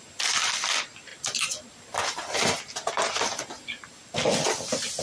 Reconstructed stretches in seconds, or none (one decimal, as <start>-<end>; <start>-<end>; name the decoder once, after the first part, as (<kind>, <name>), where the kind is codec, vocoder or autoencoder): none